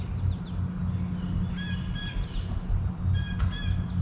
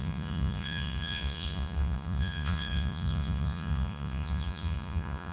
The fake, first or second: second